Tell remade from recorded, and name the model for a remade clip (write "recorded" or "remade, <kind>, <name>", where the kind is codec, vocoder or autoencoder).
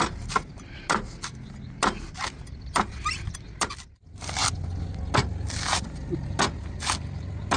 recorded